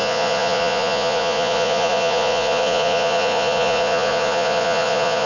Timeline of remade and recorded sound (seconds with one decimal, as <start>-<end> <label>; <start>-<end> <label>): 0.0-5.3 remade